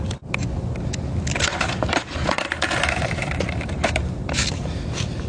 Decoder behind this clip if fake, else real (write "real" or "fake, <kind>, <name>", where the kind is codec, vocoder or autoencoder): fake, vocoder, BigVGAN v2